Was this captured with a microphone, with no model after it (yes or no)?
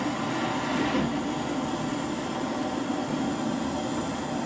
yes